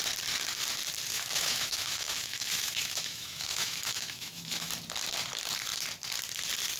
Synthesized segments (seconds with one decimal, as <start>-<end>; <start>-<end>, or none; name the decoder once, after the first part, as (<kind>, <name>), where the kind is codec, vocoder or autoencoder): 1.1-4.7 (autoencoder, DAC-VAE)